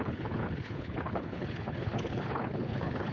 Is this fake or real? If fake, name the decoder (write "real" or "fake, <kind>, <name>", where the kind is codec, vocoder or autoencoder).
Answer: fake, codec, HILCodec